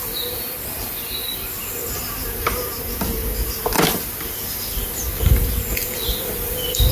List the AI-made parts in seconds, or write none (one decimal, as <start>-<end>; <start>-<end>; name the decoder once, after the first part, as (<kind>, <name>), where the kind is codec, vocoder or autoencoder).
0.0-1.8 (vocoder, BigVGAN v2); 5.6-6.9